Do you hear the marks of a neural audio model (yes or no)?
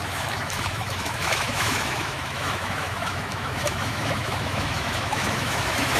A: yes